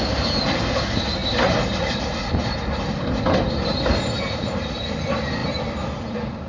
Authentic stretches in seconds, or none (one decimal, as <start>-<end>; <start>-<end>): 0.0-6.5